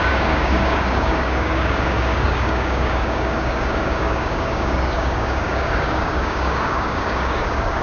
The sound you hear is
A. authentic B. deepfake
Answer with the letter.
B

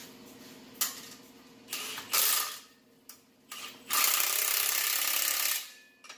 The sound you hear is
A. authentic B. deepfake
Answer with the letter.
A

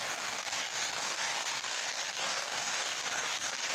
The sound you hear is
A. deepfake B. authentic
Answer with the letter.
A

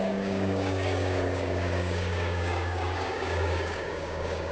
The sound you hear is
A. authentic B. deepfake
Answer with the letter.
B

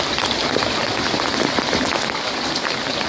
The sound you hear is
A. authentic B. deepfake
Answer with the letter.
A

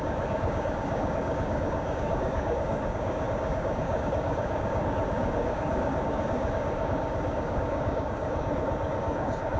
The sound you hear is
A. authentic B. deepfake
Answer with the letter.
B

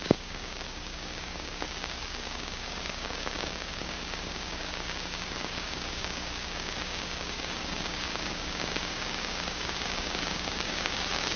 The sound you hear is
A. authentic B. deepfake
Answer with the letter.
B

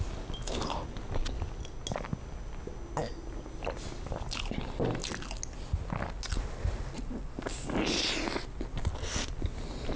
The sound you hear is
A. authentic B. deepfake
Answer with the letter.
A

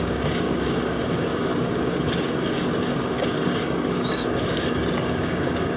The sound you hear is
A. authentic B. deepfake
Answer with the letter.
B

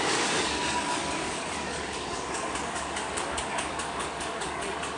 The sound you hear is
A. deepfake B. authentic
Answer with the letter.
A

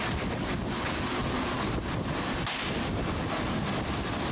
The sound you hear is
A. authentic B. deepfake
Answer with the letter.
A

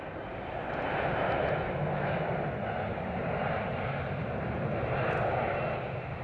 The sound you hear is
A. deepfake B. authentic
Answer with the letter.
B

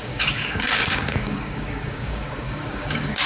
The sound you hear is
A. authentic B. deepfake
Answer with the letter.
B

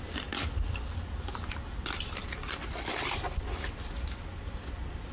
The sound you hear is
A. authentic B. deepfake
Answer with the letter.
A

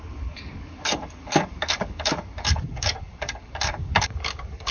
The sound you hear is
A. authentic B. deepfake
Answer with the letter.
B